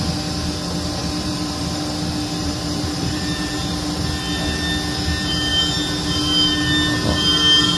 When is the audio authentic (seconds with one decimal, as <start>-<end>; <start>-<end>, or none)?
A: 0.0-1.0; 1.7-2.4; 3.7-7.8